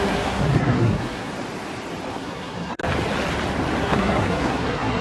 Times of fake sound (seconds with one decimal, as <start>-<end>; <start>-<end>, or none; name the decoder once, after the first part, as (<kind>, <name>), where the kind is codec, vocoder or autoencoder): 0.0-1.3 (codec, SNAC); 2.1-2.8; 3.8-5.0